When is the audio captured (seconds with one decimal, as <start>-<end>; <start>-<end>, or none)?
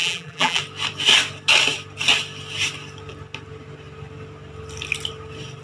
0.6-5.6